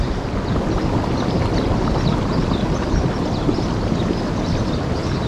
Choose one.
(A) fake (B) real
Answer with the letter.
B